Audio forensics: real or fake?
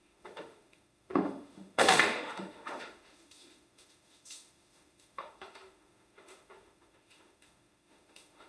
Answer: fake